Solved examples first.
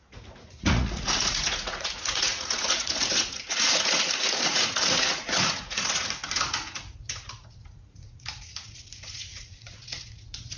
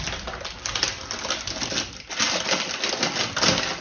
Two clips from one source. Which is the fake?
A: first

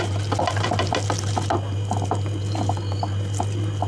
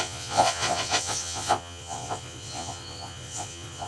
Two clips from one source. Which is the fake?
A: second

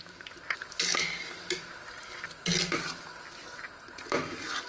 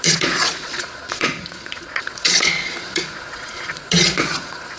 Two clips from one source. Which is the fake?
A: second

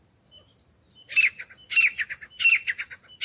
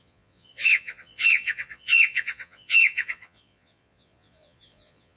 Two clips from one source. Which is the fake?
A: second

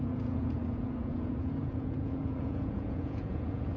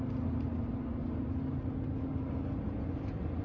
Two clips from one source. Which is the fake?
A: first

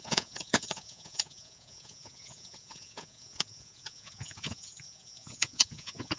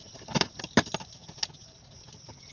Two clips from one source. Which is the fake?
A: first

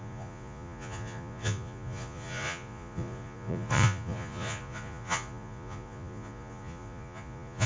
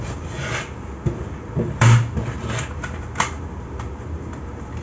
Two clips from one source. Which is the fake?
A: first